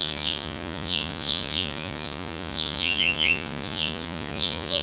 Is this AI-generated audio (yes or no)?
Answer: yes